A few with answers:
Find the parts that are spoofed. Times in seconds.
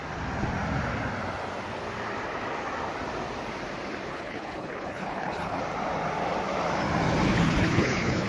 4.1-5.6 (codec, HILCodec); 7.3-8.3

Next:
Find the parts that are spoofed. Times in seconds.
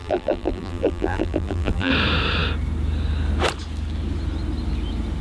0.0-1.9 (vocoder, BigVGAN v2)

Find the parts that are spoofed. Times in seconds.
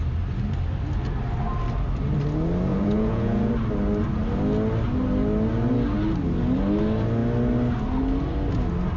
2.7-3.5 (vocoder, Vocos)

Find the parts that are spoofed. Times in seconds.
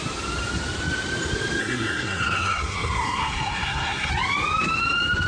1.6-4.1 (codec, SNAC)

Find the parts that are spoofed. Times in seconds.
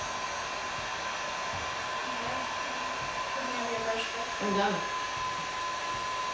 none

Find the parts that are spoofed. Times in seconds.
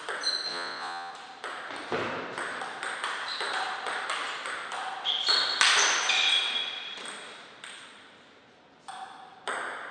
0.5-1.1 (vocoder, Vocos)